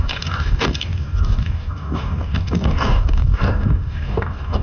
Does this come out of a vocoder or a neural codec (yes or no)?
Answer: yes